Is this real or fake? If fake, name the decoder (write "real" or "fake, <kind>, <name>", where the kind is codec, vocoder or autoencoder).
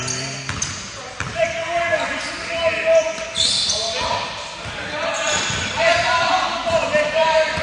real